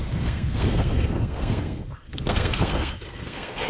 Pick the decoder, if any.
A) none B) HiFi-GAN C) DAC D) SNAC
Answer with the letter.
D